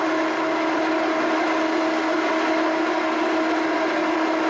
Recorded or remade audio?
recorded